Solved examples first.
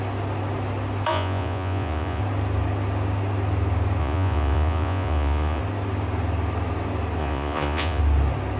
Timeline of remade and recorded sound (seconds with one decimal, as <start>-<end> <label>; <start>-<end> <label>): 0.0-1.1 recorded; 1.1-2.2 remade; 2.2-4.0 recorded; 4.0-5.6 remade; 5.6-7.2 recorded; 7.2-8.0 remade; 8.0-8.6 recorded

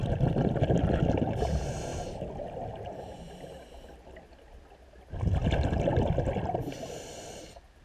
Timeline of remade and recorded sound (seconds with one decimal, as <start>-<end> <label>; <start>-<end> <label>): 0.0-7.8 recorded

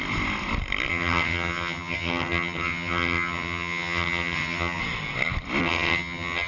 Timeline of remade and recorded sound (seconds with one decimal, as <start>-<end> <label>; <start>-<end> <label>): 0.0-0.9 recorded; 0.9-4.8 remade; 4.8-5.6 recorded; 5.6-6.5 remade